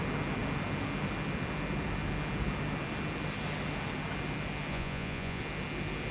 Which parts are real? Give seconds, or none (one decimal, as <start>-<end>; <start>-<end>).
0.0-4.7; 5.4-6.1